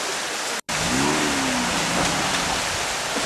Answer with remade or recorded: recorded